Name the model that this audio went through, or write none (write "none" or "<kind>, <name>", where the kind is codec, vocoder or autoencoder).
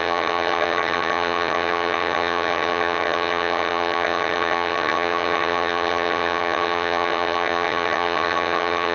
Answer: vocoder, HiFi-GAN